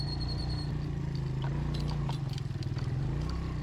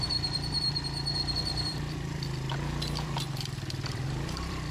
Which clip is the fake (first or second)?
second